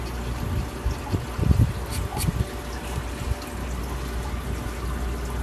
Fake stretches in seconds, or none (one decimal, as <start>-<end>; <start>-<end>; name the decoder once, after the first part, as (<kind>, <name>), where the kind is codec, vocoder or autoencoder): none